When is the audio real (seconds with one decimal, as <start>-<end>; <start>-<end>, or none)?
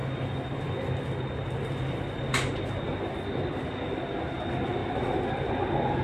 3.6-4.8; 5.5-6.0